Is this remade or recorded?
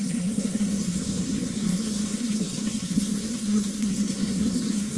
remade